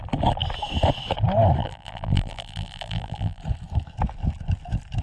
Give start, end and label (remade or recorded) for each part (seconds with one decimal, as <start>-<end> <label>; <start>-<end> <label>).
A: 0.0-1.6 recorded; 1.6-3.4 remade; 3.4-5.0 recorded